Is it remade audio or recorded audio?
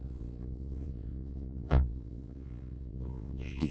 remade